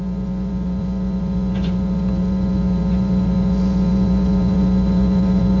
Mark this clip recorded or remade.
remade